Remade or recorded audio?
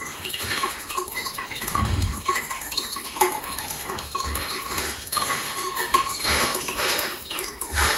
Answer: remade